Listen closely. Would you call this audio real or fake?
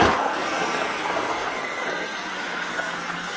fake